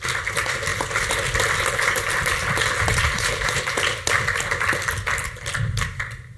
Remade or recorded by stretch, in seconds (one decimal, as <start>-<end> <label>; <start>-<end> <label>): 0.0-2.9 recorded; 2.9-3.6 remade; 3.6-6.4 recorded